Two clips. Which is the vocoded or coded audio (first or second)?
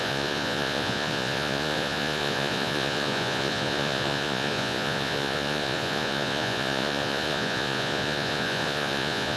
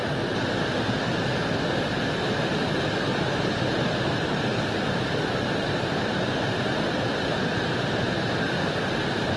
first